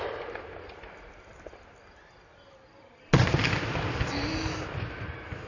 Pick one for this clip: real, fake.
real